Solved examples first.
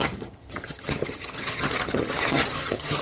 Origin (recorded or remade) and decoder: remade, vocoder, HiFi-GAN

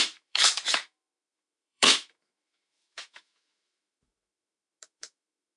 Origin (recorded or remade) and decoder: remade, autoencoder, DAC-VAE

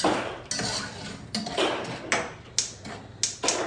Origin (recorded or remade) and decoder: recorded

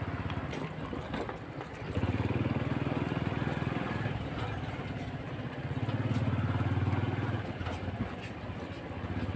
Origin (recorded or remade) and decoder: recorded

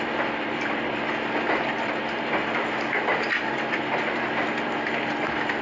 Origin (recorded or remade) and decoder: remade, vocoder, BigVGAN v2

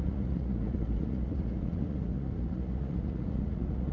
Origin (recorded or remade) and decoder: remade, vocoder, Vocos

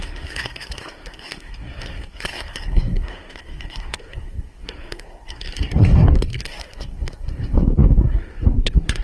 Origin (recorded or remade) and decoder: remade, codec, SNAC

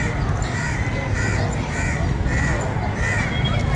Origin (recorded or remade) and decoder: recorded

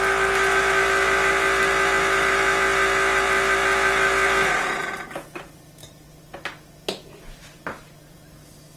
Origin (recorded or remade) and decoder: recorded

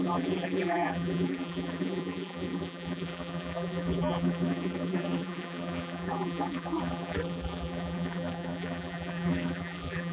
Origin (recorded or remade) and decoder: remade, vocoder, BigVGAN v2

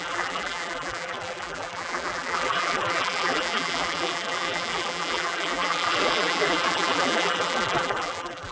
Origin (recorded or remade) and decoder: remade, vocoder, BigVGAN v2